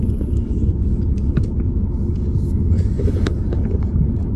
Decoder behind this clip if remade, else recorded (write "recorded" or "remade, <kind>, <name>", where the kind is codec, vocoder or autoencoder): remade, codec, DAC